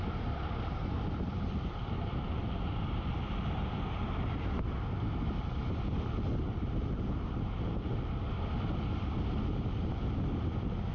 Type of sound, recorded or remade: recorded